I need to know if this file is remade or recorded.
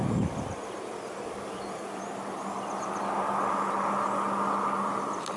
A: recorded